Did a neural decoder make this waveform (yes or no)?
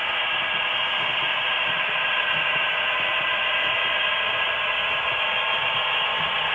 no